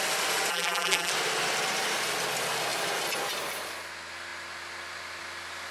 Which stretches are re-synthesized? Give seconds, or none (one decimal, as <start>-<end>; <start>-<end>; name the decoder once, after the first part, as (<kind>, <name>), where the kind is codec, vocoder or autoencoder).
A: 0.5-1.1 (vocoder, BigVGAN v2)